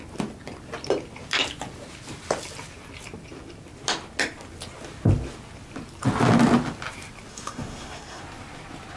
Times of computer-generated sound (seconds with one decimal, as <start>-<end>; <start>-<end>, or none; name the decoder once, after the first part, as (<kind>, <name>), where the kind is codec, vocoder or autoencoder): 7.3-8.2 (codec, SNAC)